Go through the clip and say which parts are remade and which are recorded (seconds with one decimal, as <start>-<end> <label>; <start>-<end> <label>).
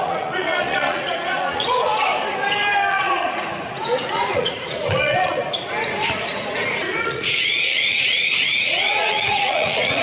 0.0-2.1 remade; 2.1-2.9 recorded; 2.9-5.4 remade; 5.4-6.1 recorded; 6.1-10.0 remade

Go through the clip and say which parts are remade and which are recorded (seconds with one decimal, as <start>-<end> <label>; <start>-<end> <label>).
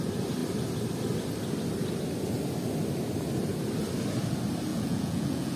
0.0-4.7 recorded; 4.7-5.6 remade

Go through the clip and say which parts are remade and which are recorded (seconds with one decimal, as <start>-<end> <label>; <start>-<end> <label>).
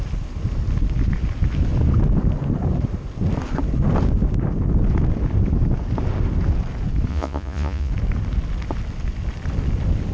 0.0-7.1 recorded; 7.1-7.9 remade; 7.9-10.1 recorded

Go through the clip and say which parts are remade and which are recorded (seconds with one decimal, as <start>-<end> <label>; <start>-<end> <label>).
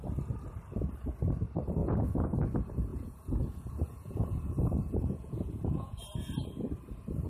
0.0-1.8 recorded; 1.8-2.4 remade; 2.4-2.9 recorded; 2.9-6.0 remade; 6.0-7.3 recorded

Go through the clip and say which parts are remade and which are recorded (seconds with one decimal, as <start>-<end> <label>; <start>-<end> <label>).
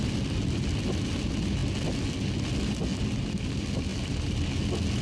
0.0-5.0 recorded